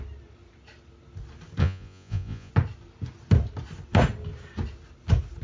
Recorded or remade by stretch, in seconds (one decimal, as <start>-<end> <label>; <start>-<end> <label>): 0.0-1.6 recorded; 1.6-2.5 remade; 2.5-5.4 recorded

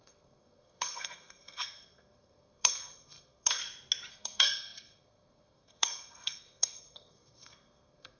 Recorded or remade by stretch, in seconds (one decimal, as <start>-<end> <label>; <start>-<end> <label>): 0.0-3.6 remade; 3.6-4.1 recorded; 4.1-8.2 remade

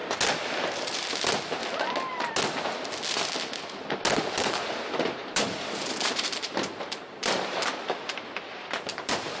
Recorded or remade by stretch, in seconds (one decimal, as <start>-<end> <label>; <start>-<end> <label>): 0.0-4.3 recorded; 4.3-9.4 remade

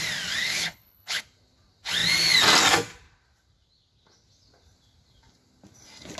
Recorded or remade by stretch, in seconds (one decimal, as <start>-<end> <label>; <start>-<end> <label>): 0.0-0.4 recorded; 0.4-1.2 remade; 1.2-6.2 recorded

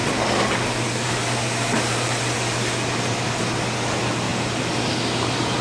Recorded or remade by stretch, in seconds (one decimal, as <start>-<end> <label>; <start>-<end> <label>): 0.0-5.6 recorded

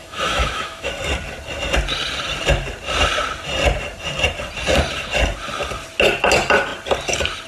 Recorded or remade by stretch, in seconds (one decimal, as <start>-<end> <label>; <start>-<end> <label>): 0.0-0.9 remade; 0.9-7.5 recorded

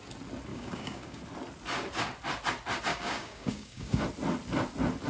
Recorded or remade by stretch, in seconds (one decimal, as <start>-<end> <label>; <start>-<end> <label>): 0.0-0.5 recorded; 0.5-1.2 remade; 1.2-2.9 recorded; 2.9-4.0 remade; 4.0-5.1 recorded

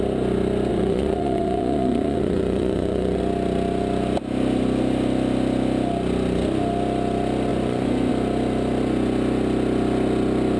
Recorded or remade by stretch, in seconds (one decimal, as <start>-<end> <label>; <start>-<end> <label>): 0.0-0.7 recorded; 0.7-3.2 remade; 3.2-7.5 recorded; 7.5-8.1 remade; 8.1-10.6 recorded